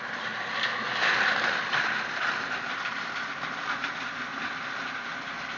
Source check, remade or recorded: recorded